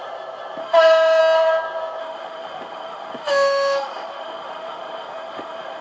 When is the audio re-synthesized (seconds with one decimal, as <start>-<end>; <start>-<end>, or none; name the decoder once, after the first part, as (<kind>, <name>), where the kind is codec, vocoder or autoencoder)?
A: 0.6-1.2 (autoencoder, DAC-VAE); 2.0-5.8